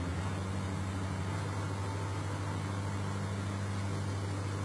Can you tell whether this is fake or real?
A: real